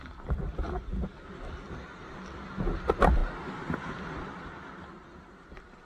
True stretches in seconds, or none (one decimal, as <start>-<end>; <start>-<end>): 0.0-5.9